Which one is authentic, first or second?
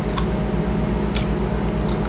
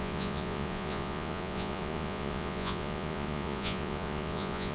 first